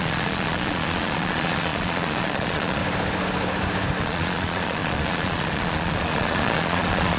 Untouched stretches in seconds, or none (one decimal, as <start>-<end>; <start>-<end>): 2.8-4.0